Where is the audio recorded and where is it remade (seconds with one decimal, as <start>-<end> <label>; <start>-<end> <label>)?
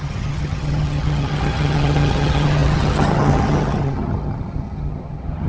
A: 0.0-5.5 remade